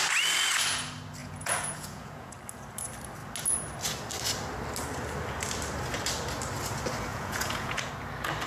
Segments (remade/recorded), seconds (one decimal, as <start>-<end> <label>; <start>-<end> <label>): 0.0-1.2 recorded; 1.2-2.3 remade; 2.3-7.1 recorded; 7.1-7.9 remade; 7.9-8.5 recorded